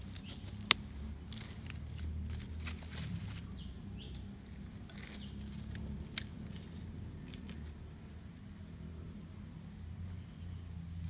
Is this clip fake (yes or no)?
no